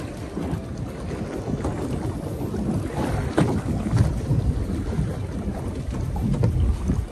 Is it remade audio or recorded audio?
recorded